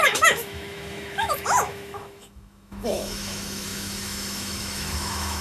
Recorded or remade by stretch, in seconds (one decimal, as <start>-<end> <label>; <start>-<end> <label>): 0.0-5.4 remade